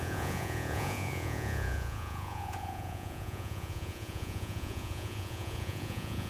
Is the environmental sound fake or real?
fake